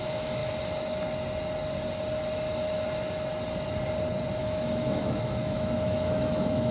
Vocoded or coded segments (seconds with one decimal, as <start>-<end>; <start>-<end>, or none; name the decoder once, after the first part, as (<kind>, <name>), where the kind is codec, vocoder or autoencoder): 0.0-0.4 (autoencoder, DAC-VAE); 4.4-6.7